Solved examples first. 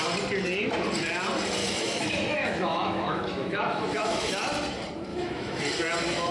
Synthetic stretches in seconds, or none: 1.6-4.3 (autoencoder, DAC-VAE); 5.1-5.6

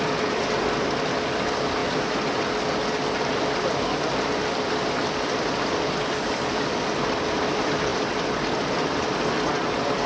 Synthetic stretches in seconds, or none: none

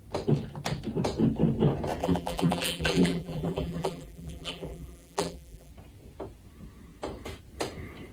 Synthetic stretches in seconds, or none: 2.0-5.7 (vocoder, BigVGAN v2)